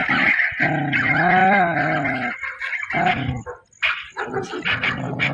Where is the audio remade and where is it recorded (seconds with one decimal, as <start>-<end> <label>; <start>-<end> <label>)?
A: 0.0-5.3 recorded